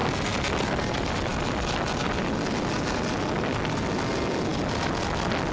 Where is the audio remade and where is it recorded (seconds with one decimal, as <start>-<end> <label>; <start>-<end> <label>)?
0.0-5.5 recorded